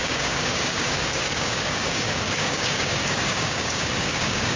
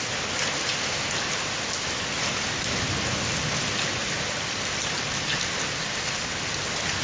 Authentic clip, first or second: second